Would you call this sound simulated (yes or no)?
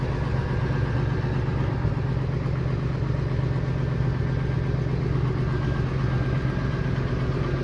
no